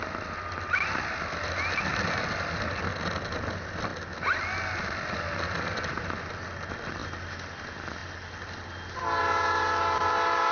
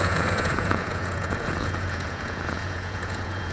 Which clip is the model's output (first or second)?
second